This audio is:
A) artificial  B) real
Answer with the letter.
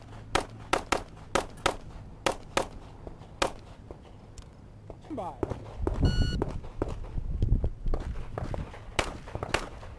B